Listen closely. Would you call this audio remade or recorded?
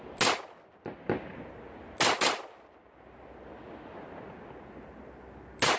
recorded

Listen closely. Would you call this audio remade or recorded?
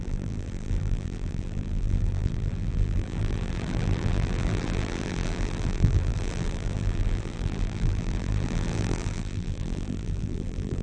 remade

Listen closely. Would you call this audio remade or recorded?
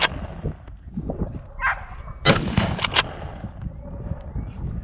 recorded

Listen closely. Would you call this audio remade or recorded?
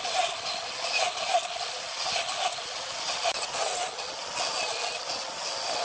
recorded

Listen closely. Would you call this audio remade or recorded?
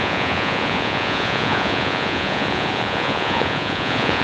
remade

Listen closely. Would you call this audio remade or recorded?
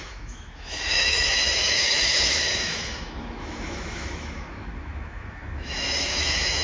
remade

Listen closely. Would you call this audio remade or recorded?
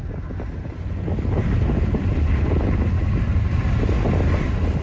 recorded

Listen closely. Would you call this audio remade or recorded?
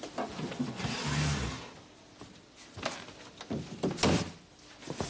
recorded